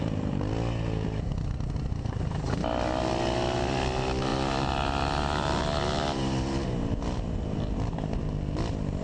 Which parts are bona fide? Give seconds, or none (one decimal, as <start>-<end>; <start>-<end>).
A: 0.0-4.3; 5.6-9.0